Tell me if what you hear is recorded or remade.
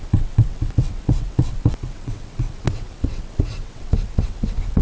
remade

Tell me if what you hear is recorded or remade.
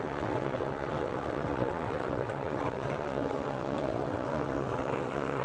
remade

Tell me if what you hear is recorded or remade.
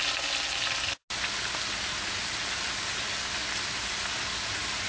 recorded